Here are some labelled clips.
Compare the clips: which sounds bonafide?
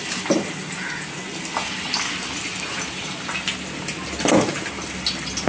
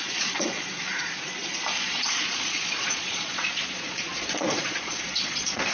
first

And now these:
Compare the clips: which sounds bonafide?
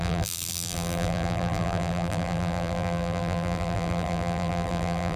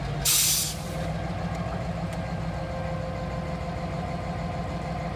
second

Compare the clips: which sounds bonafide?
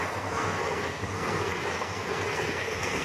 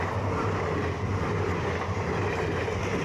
second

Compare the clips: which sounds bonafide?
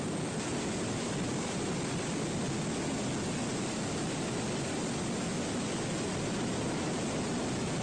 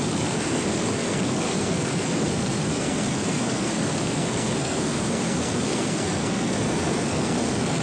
first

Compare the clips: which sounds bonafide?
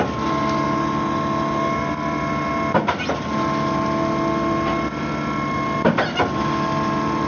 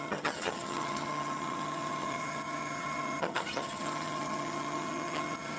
first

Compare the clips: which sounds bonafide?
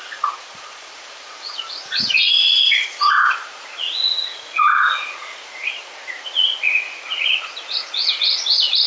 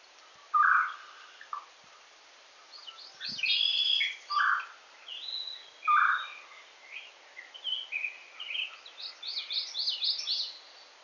second